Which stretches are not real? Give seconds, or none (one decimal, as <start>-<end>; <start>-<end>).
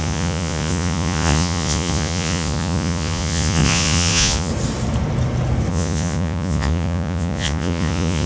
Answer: 0.0-4.5; 5.7-8.3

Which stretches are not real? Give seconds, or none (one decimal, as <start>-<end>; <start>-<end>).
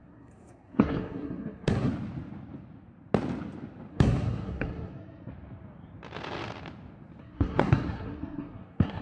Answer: 0.0-1.9; 3.9-5.3; 7.2-9.0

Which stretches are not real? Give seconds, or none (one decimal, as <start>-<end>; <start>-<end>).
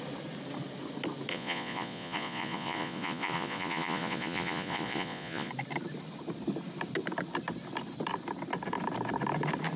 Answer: 1.3-5.5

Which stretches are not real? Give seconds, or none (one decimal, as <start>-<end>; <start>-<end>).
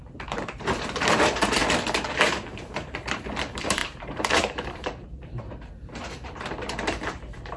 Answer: 0.0-1.6; 2.2-7.6